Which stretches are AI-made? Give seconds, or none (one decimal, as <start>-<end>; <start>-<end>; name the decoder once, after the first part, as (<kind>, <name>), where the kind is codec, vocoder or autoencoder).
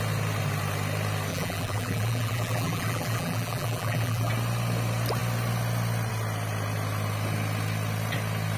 1.3-4.3 (vocoder, BigVGAN v2)